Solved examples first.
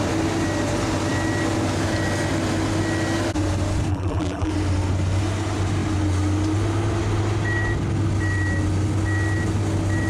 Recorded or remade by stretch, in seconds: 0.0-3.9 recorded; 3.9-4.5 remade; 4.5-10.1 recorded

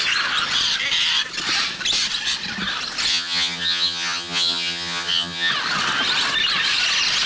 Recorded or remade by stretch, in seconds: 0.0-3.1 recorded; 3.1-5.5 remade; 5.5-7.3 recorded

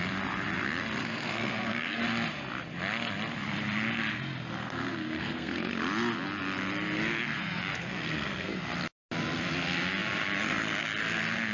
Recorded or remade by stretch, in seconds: 0.0-1.0 recorded; 1.0-2.0 remade; 2.0-4.6 recorded; 4.6-5.7 remade; 5.7-7.8 recorded; 7.8-8.5 remade; 8.5-11.5 recorded

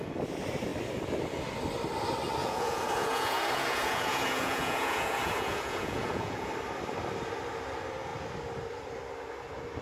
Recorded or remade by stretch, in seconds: 0.0-2.4 recorded; 2.4-6.5 remade; 6.5-9.8 recorded

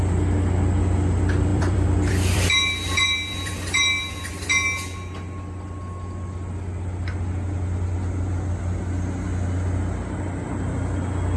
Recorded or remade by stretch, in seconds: 0.0-1.5 recorded; 1.5-4.3 remade; 4.3-11.4 recorded